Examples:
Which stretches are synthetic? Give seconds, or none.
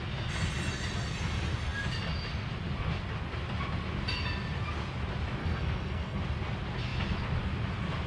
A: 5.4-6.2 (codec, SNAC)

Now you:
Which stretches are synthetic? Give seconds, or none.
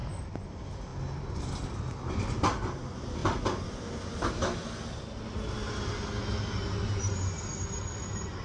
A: none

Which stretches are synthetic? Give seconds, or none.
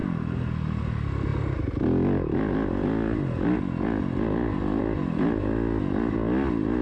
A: none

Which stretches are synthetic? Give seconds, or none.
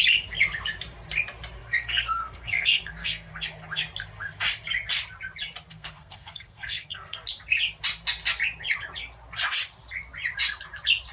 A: 1.6-3.3 (codec, SNAC); 5.7-7.2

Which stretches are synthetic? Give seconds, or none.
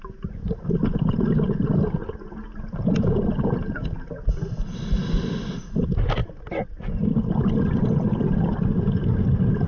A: none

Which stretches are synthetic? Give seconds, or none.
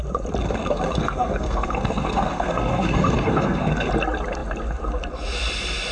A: 0.4-3.9 (codec, SNAC)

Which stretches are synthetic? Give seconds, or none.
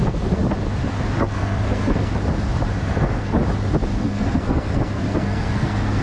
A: 0.0-0.4 (codec, SNAC); 1.2-2.1; 2.8-3.4; 4.0-6.0